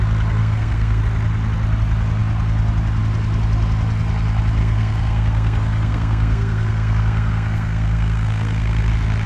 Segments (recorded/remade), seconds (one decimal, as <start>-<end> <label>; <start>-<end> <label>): 0.0-0.4 recorded; 0.4-1.0 remade; 1.0-4.6 recorded; 4.6-8.9 remade; 8.9-9.3 recorded